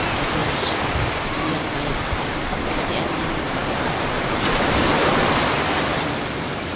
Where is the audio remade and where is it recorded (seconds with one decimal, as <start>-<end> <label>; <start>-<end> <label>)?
0.0-0.4 recorded; 0.4-3.0 remade; 3.0-3.6 recorded; 3.6-4.4 remade; 4.4-5.9 recorded; 5.9-6.8 remade